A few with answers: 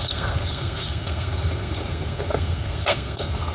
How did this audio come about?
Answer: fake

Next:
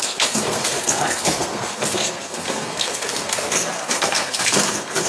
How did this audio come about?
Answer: fake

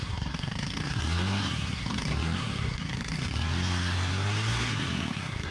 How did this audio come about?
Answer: fake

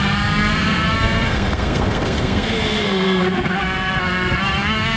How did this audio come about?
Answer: fake